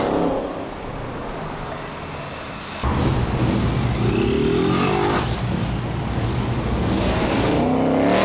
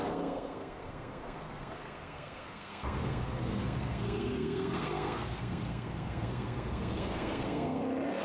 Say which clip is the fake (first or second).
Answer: second